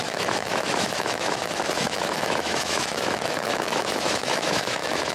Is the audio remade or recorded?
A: remade